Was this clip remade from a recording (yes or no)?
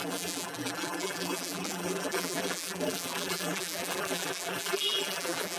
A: yes